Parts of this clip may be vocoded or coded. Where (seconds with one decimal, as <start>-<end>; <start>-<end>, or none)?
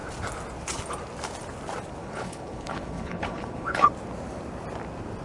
2.0-3.9